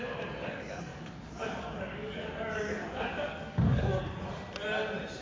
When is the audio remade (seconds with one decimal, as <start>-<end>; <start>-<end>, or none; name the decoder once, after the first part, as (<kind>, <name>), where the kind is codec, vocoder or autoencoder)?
0.9-4.0 (codec, DAC)